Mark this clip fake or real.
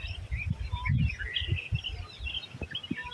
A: real